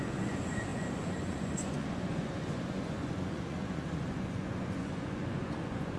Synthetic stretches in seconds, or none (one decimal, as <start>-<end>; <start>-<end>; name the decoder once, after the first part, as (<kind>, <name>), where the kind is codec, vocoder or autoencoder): 0.0-6.0 (vocoder, Vocos)